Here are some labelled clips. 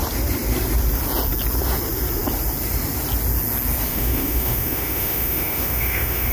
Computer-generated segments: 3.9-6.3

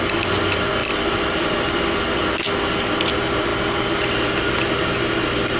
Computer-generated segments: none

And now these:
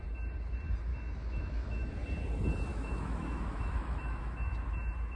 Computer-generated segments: 0.9-1.9; 2.7-4.7